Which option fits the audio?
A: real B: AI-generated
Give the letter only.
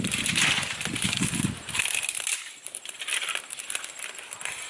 A